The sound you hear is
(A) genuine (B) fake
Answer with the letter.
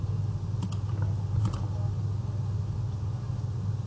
A